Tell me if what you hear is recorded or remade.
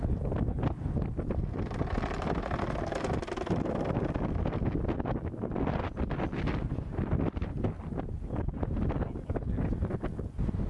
recorded